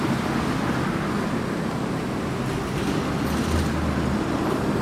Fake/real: real